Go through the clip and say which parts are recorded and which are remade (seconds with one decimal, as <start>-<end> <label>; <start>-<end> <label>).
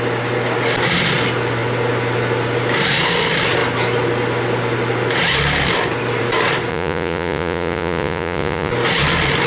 0.0-6.7 recorded; 6.7-8.7 remade; 8.7-9.5 recorded